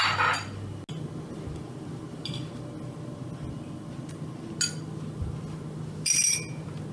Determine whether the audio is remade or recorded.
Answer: recorded